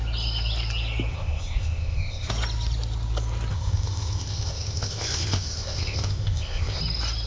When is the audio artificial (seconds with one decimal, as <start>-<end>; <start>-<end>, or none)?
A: 1.1-2.3; 3.5-6.8